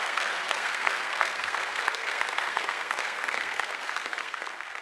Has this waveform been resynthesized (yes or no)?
yes